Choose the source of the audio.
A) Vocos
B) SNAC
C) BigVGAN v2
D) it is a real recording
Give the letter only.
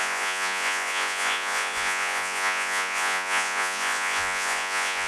A